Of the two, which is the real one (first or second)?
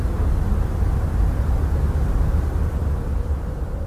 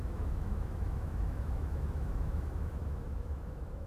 first